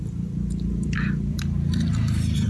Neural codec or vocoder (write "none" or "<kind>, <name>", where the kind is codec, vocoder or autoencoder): vocoder, BigVGAN v2